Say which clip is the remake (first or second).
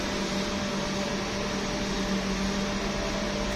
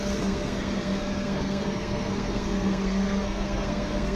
second